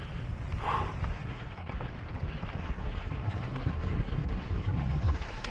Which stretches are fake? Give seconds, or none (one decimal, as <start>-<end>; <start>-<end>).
1.1-1.8; 2.6-5.5